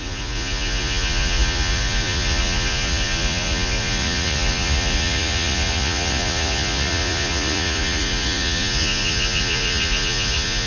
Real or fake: fake